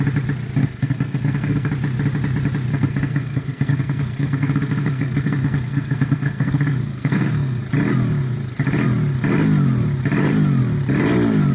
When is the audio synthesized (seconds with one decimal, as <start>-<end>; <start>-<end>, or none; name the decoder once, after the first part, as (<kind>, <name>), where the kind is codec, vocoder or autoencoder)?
0.6-1.7 (codec, SNAC); 2.7-7.6